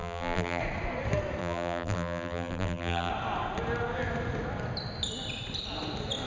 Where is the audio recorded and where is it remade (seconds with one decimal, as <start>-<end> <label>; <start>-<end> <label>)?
0.0-0.6 remade; 0.6-1.4 recorded; 1.4-3.1 remade; 3.1-6.3 recorded